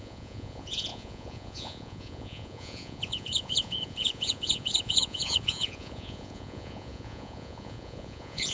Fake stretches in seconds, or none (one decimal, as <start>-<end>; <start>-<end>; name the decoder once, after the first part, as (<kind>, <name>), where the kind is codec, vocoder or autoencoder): 0.0-8.5 (vocoder, Vocos)

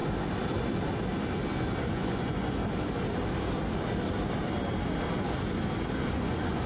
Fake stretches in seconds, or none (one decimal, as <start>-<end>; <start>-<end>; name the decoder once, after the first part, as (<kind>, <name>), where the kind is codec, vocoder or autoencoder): 1.9-2.6 (vocoder, Vocos); 6.1-6.7

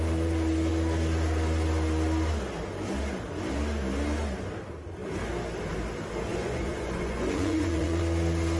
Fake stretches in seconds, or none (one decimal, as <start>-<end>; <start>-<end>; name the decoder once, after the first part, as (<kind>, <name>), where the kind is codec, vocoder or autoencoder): 6.3-8.0 (vocoder, Vocos)

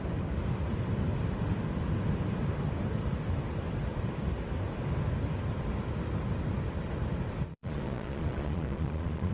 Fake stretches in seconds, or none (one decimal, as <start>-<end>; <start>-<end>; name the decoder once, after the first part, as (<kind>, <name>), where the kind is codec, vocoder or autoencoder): 7.5-9.3 (vocoder, Vocos)

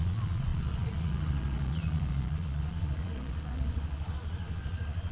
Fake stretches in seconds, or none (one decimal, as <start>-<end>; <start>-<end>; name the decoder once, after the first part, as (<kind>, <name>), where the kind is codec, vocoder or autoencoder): 0.0-5.1 (vocoder, Vocos)

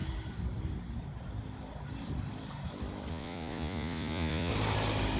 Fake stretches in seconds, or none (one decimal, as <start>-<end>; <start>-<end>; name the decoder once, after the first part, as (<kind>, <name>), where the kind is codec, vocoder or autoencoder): 3.1-4.5 (vocoder, Vocos)

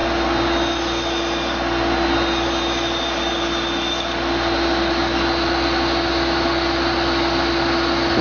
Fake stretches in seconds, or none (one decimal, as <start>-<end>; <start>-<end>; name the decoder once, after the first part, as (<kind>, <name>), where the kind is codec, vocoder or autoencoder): none

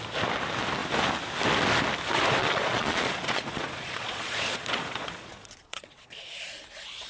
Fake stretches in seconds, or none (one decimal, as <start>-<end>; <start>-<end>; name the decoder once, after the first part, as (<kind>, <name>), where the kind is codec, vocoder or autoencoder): 2.4-6.5 (vocoder, Vocos)